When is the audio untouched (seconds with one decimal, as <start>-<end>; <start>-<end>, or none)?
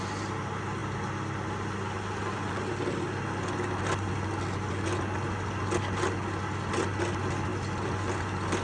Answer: 0.0-8.6